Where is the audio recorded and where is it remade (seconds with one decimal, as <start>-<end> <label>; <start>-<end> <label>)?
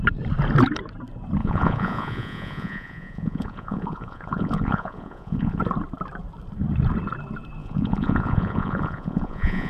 0.0-1.4 recorded; 1.4-5.6 remade; 5.6-7.6 recorded; 7.6-9.7 remade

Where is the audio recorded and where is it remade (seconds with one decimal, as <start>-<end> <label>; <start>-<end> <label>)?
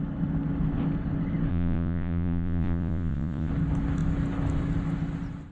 0.0-1.5 recorded; 1.5-3.5 remade; 3.5-5.5 recorded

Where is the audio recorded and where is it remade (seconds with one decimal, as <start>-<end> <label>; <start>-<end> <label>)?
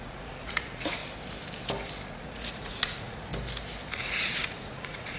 0.0-1.0 remade; 1.0-2.1 recorded; 2.1-3.3 remade; 3.3-3.9 recorded; 3.9-5.2 remade